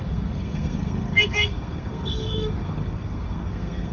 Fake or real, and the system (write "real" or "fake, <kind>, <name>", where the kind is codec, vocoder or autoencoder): fake, codec, SNAC